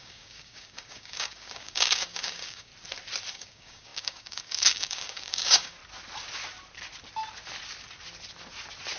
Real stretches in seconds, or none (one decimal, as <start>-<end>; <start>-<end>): 2.7-3.3; 5.8-9.0